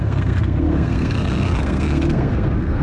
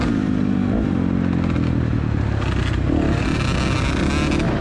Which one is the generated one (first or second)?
first